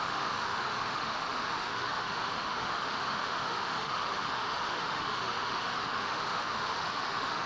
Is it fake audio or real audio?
fake